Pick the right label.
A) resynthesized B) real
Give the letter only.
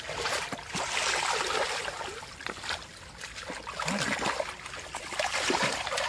B